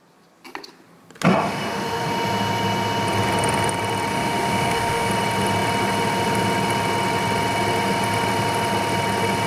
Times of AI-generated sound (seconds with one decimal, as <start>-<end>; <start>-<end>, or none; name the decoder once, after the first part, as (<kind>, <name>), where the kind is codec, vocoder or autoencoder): 1.3-2.1 (autoencoder, DAC-VAE); 4.1-5.1